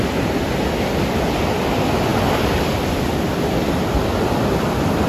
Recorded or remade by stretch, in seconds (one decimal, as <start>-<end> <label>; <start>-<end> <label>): 0.0-5.1 recorded